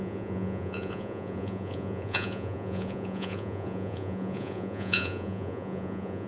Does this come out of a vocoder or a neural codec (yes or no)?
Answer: yes